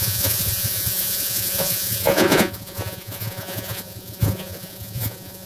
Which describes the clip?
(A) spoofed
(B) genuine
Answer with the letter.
A